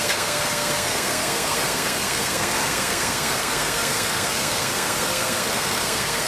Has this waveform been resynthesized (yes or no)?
yes